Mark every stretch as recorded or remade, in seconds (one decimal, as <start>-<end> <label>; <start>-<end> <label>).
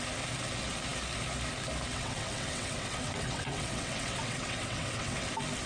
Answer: 0.0-1.9 recorded; 1.9-5.3 remade; 5.3-5.7 recorded